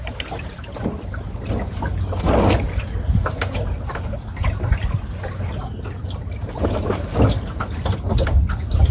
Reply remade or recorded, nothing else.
recorded